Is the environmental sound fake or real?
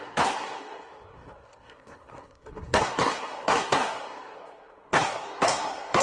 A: fake